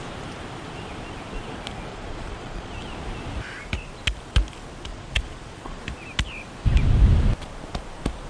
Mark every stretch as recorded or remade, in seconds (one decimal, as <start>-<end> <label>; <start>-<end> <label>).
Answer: 0.0-1.9 recorded; 1.9-2.8 remade; 2.8-4.9 recorded; 4.9-5.8 remade; 5.8-8.3 recorded